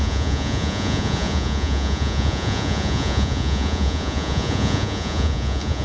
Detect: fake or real fake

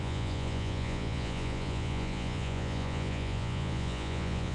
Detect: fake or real fake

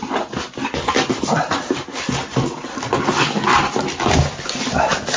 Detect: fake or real real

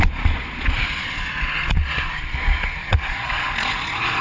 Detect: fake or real fake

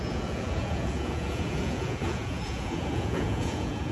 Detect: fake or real fake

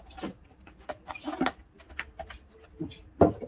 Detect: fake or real real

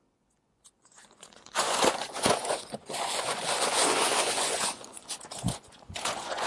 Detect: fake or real fake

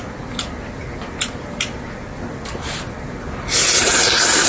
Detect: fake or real real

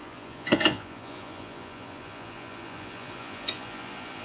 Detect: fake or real fake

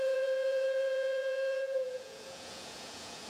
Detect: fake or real fake